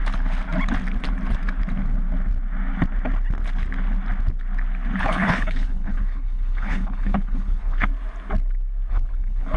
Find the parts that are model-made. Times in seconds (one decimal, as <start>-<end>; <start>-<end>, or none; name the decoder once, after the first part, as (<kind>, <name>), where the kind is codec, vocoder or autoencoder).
5.0-7.9 (codec, HILCodec); 8.9-9.6